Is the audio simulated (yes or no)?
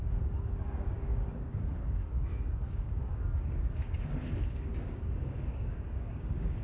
yes